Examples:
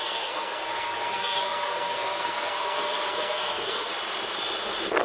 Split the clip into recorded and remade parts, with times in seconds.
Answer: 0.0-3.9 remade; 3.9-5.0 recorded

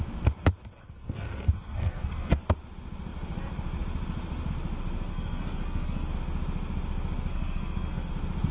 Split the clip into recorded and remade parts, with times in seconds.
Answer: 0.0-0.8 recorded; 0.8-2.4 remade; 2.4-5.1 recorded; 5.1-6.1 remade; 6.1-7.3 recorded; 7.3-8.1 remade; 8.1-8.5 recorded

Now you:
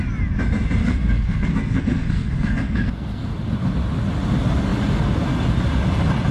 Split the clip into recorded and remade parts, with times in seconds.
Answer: 0.0-0.8 recorded; 0.8-3.3 remade; 3.3-6.3 recorded

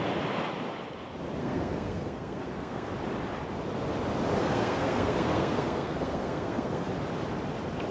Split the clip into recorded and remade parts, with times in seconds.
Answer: 0.0-1.4 recorded; 1.4-2.9 remade; 2.9-4.4 recorded; 4.4-6.9 remade; 6.9-7.9 recorded